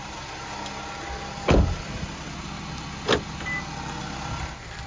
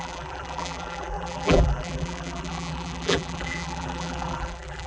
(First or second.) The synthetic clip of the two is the second